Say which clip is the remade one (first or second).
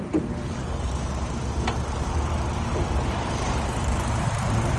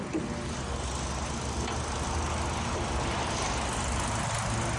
first